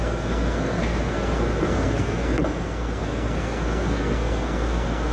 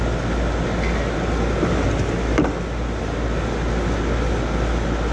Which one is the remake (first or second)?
first